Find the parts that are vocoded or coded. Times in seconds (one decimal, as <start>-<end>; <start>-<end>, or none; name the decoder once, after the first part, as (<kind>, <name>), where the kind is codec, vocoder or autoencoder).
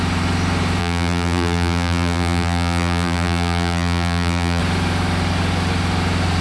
0.8-4.6 (vocoder, BigVGAN v2)